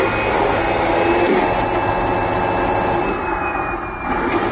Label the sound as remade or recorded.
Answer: recorded